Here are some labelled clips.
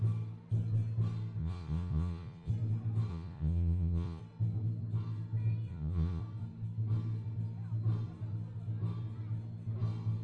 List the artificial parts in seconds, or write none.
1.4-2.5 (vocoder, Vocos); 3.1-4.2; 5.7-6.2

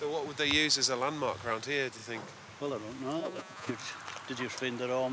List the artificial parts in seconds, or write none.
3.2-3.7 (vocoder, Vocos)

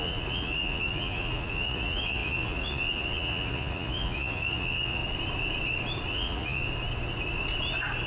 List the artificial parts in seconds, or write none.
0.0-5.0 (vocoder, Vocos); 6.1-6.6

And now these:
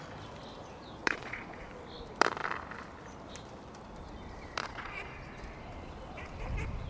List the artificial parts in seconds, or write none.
1.0-1.7 (vocoder, Vocos); 4.6-5.4

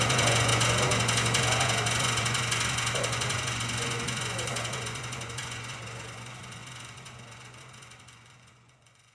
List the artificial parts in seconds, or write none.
0.0-9.1 (vocoder, Vocos)

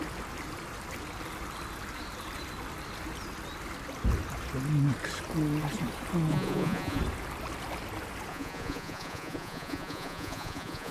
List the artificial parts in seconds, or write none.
6.3-7.0 (vocoder, Vocos); 8.3-10.9